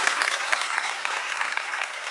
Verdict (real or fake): fake